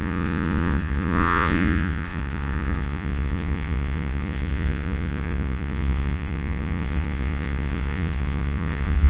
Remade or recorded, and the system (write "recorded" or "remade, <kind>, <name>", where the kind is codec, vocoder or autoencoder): remade, vocoder, Vocos